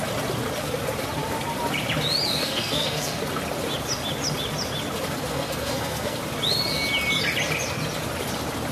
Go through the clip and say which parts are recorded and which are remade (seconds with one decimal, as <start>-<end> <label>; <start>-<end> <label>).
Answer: 0.0-2.4 recorded; 2.4-3.2 remade; 3.2-5.3 recorded; 5.3-6.2 remade; 6.2-8.7 recorded